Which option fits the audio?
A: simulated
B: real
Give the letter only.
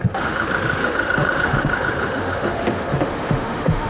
A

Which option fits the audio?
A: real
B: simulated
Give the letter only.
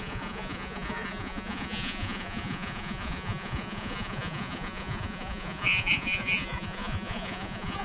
B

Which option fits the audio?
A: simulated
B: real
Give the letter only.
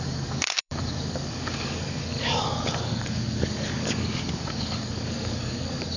A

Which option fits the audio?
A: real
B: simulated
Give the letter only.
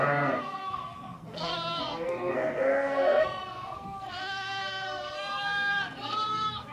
B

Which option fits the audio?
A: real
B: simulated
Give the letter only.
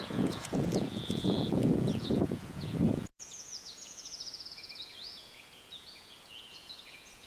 B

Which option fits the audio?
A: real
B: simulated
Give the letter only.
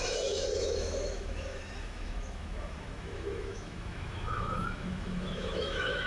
B